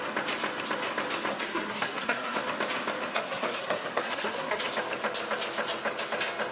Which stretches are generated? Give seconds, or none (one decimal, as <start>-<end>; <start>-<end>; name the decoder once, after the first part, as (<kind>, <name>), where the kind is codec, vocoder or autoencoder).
1.3-2.4 (codec, SNAC); 3.1-4.6